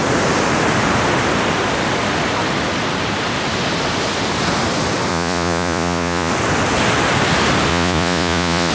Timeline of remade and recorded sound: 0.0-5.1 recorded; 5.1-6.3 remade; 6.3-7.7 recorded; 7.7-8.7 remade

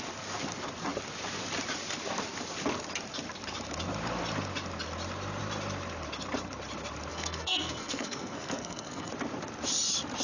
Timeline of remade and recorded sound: 0.0-7.1 recorded; 7.1-9.1 remade; 9.1-10.2 recorded

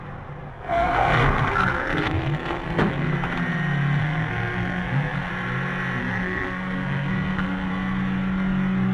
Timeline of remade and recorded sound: 0.0-0.5 recorded; 0.5-3.1 remade; 3.1-4.0 recorded; 4.0-5.3 remade; 5.3-6.0 recorded; 6.0-7.7 remade; 7.7-8.9 recorded

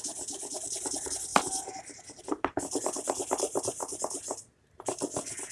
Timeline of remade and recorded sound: 0.0-5.5 recorded

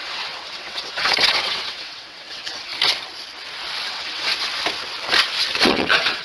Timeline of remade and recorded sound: 0.0-2.7 remade; 2.7-3.9 recorded; 3.9-4.3 remade; 4.3-5.6 recorded; 5.6-6.2 remade

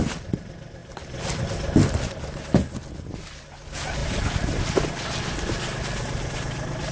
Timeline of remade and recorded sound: 0.0-6.9 recorded